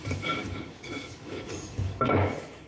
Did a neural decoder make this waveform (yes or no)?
yes